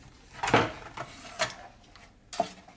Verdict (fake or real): real